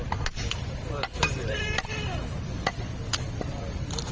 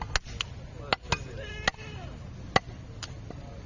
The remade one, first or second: first